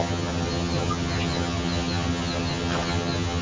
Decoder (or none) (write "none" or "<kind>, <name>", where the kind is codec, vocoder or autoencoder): vocoder, HiFi-GAN